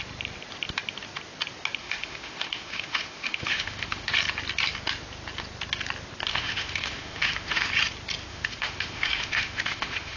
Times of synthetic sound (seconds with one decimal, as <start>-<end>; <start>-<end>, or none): 1.8-4.1; 6.3-7.7; 8.3-10.2